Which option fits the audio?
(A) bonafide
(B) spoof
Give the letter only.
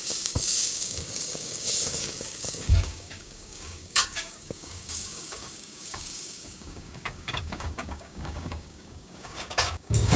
B